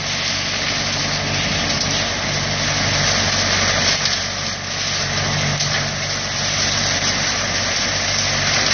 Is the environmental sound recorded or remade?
recorded